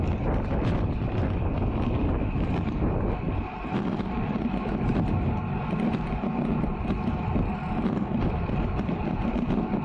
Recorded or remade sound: recorded